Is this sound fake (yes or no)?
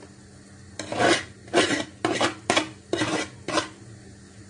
no